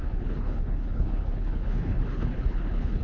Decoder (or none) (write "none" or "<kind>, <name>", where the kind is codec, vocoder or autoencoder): codec, HILCodec